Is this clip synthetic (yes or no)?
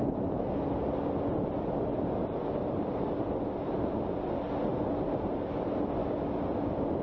no